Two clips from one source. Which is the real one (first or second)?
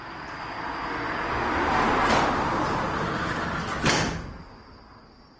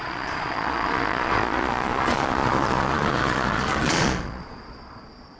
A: first